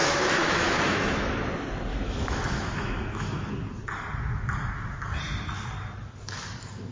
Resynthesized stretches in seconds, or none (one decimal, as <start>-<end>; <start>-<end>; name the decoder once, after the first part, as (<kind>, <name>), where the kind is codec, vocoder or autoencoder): 0.0-1.4 (autoencoder, DAC-VAE); 1.9-3.5